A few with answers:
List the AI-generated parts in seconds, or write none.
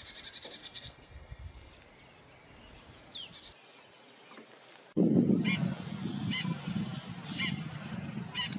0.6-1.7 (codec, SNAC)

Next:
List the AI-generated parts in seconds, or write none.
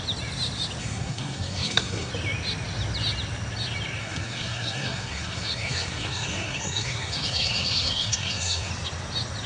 0.8-2.1 (codec, SNAC); 4.0-8.7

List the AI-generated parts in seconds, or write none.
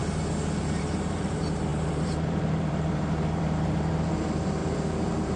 0.6-5.4 (vocoder, BigVGAN v2)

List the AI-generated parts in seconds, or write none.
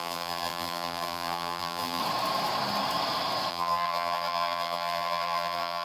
0.0-2.0 (vocoder, BigVGAN v2); 3.5-5.8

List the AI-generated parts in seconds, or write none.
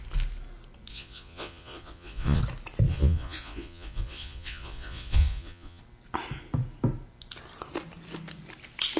0.9-2.4 (vocoder, Vocos); 2.9-5.8